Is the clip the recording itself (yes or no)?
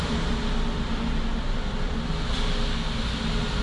yes